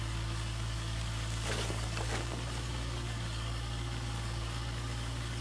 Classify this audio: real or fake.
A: fake